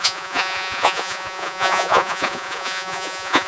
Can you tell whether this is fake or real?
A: fake